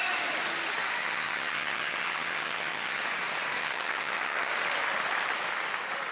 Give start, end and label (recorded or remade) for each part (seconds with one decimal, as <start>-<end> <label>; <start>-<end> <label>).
0.0-1.0 recorded; 1.0-3.0 remade; 3.0-3.6 recorded; 3.6-4.5 remade; 4.5-6.1 recorded